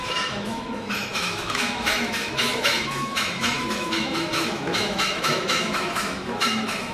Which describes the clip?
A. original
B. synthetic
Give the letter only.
B